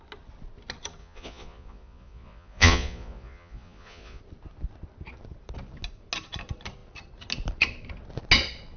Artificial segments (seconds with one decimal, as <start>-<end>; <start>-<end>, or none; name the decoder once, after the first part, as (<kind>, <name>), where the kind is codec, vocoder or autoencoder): 1.0-4.2 (vocoder, Vocos)